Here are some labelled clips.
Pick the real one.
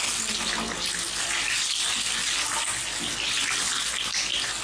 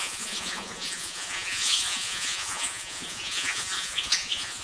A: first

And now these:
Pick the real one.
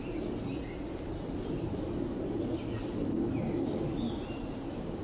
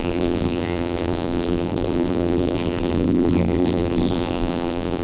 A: first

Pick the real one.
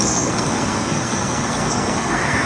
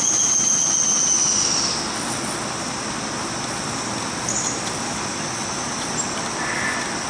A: second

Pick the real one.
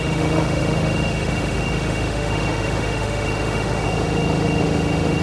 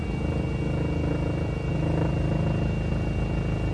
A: second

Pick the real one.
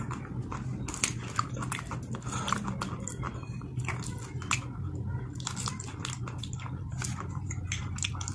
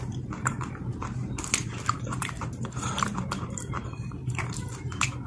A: first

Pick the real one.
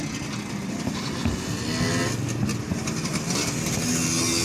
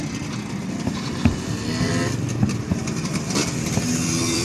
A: first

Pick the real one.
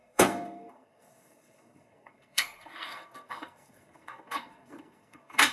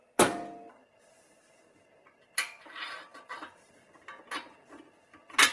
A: second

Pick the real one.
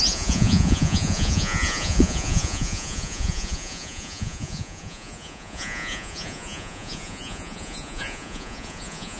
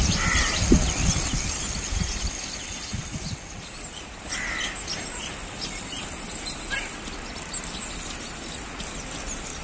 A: second